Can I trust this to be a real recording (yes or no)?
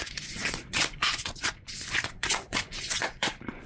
no